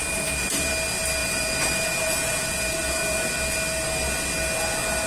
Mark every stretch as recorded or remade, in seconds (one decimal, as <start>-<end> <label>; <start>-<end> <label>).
0.0-0.7 remade; 0.7-1.2 recorded; 1.2-3.3 remade; 3.3-5.1 recorded